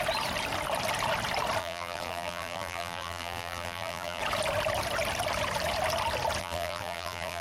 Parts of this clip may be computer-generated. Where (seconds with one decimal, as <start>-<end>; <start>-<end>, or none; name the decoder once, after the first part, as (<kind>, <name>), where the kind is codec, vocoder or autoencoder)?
1.6-4.2 (vocoder, BigVGAN v2); 6.4-7.4